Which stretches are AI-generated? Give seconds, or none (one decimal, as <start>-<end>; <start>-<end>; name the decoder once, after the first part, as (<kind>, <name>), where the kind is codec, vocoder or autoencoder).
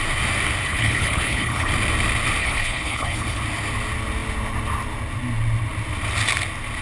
0.6-1.7 (codec, HILCodec); 2.4-3.4